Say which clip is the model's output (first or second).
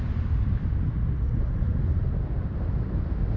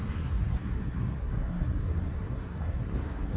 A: second